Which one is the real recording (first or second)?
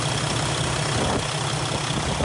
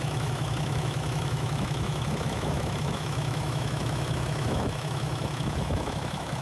first